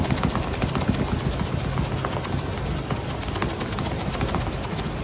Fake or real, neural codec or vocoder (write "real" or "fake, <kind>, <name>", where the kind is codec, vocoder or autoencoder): real